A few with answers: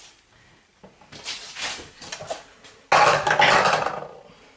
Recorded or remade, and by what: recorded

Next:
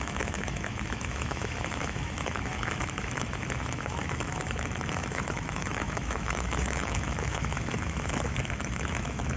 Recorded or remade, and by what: remade, autoencoder, DAC-VAE